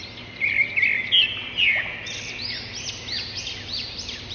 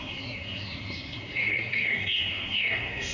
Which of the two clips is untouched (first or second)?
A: first